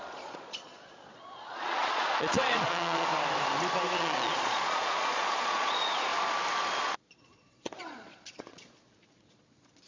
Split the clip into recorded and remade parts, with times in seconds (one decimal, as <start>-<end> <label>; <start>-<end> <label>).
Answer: 0.0-3.1 remade; 3.1-3.9 recorded; 3.9-6.1 remade; 6.1-6.8 recorded; 6.8-9.9 remade